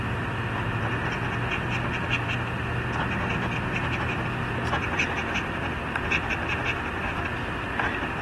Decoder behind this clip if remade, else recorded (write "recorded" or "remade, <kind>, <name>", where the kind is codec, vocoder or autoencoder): recorded